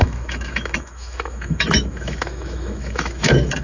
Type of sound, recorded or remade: remade